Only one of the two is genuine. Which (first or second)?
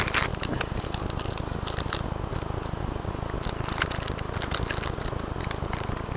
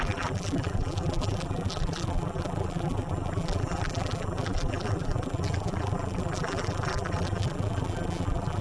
first